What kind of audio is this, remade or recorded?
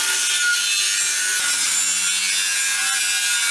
recorded